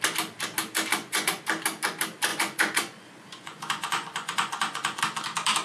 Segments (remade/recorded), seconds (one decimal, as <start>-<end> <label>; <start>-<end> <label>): 0.0-0.9 recorded; 0.9-1.4 remade; 1.4-2.3 recorded; 2.3-5.0 remade; 5.0-5.6 recorded